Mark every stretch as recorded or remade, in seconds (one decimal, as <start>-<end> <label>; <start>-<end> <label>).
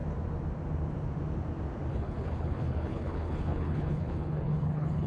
0.0-1.9 recorded; 1.9-5.1 remade